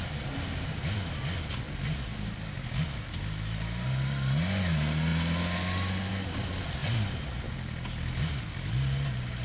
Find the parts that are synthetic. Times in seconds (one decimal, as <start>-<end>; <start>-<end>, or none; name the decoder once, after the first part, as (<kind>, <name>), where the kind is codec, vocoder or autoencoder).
0.0-6.8 (vocoder, BigVGAN v2); 7.7-9.4